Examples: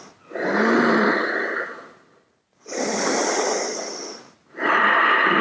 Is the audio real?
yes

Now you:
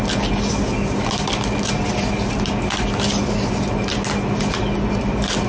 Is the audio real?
yes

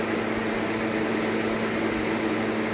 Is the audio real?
yes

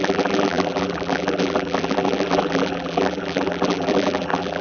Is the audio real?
no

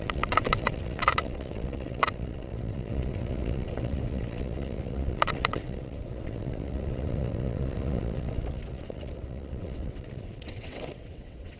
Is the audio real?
no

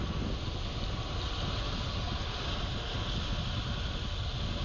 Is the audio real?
yes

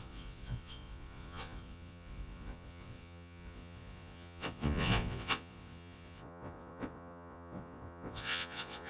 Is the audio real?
no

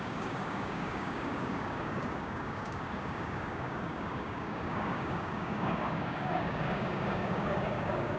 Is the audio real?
no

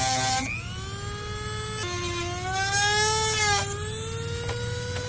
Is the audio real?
yes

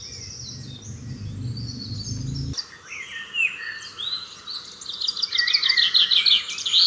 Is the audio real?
yes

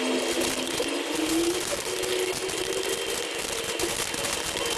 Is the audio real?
yes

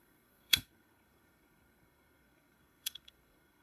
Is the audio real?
no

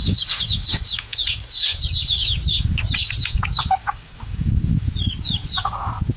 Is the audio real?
yes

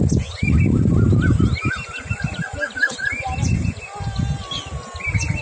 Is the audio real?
yes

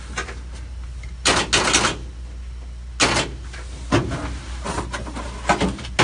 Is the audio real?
yes